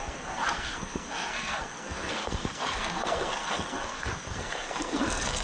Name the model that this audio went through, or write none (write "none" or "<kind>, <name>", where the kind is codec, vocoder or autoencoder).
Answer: codec, SNAC